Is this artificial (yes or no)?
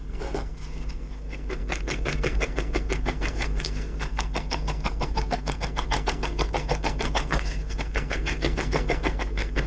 yes